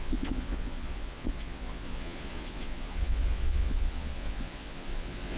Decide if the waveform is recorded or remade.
remade